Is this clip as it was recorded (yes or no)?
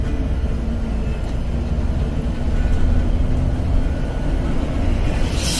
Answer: yes